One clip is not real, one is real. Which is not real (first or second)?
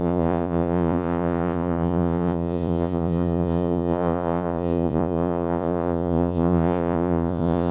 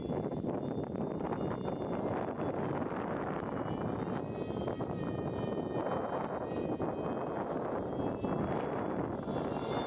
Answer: first